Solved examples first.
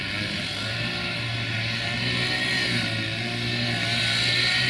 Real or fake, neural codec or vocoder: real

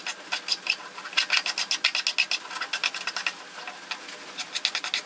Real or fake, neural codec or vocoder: real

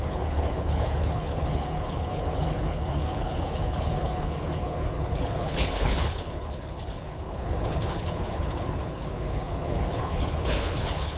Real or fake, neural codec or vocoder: fake, codec, HILCodec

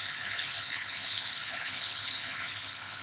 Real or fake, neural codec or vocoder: fake, codec, HILCodec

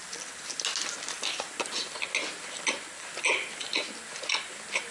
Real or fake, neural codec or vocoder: real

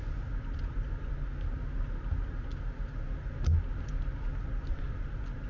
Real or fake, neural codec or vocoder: real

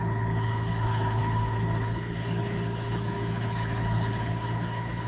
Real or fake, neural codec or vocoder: fake, codec, HILCodec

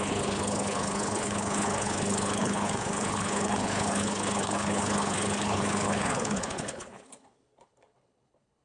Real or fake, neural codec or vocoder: fake, codec, HILCodec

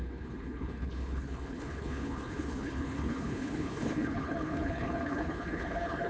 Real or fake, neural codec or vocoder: fake, codec, HILCodec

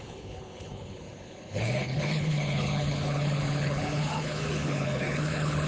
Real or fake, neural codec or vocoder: fake, codec, HILCodec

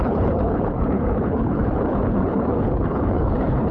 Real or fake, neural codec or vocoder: fake, codec, HILCodec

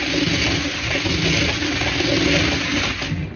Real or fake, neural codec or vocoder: real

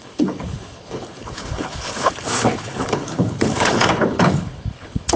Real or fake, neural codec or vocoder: fake, codec, HILCodec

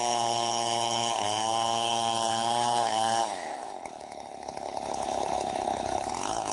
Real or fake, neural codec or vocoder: fake, codec, HILCodec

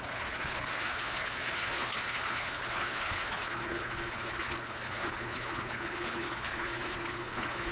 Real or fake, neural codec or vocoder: fake, codec, HILCodec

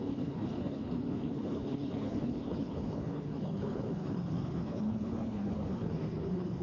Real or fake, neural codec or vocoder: fake, codec, HILCodec